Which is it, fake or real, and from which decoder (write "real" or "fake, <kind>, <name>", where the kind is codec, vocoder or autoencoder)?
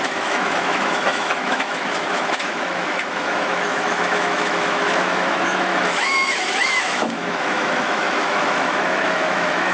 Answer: fake, autoencoder, DAC-VAE